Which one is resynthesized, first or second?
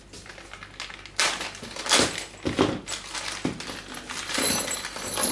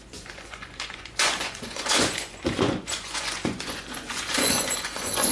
second